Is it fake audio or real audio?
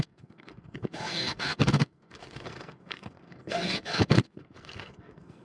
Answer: fake